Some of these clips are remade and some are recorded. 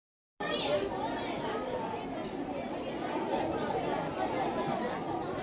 recorded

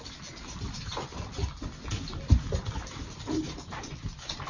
recorded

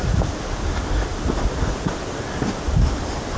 recorded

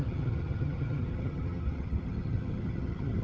remade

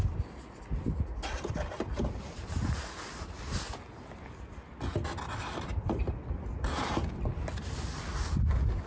recorded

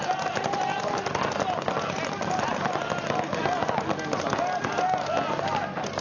recorded